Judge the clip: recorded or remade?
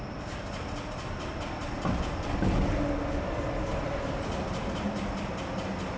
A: recorded